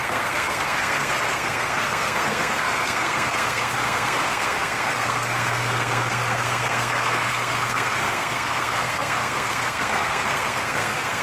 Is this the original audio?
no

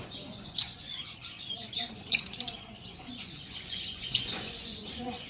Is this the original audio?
no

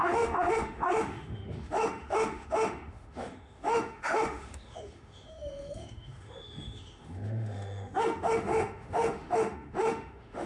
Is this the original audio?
no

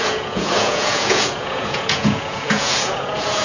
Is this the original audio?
no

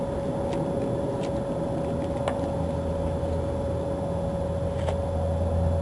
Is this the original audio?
yes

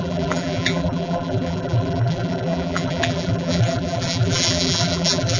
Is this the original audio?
no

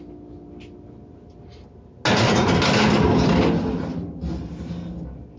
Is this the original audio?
yes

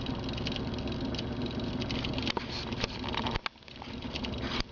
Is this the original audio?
yes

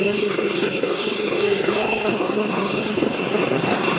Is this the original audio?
no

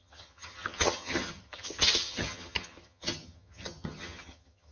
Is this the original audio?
no